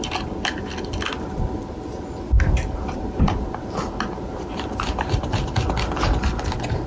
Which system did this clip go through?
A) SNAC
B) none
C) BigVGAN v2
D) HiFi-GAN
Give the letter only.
B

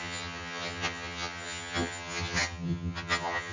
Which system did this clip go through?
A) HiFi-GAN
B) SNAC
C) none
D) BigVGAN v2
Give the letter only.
A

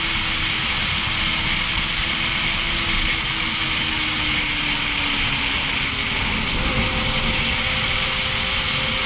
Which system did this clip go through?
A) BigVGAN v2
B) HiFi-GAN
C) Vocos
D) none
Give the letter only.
D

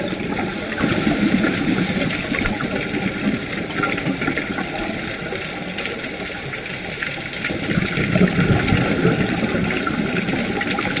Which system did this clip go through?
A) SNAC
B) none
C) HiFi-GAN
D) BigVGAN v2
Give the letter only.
B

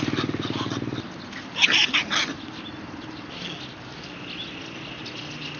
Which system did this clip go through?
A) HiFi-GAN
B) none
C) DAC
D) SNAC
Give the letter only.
B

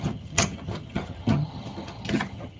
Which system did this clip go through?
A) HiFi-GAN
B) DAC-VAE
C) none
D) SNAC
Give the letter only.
A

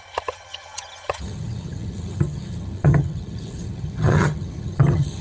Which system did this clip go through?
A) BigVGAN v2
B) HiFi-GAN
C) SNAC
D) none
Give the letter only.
B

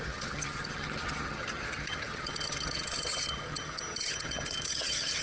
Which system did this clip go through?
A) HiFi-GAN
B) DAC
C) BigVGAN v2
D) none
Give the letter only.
A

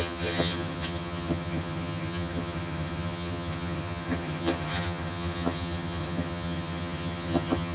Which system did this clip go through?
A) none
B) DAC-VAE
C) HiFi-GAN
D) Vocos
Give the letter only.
C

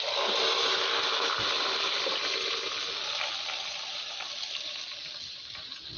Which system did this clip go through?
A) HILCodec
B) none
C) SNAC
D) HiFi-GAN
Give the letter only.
B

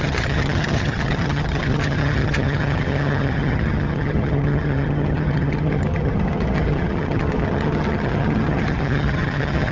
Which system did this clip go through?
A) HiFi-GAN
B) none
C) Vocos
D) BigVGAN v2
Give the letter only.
A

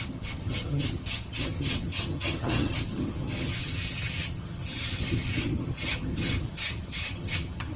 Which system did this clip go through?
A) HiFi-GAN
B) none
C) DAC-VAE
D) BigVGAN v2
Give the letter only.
A